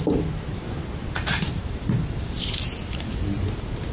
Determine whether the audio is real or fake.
fake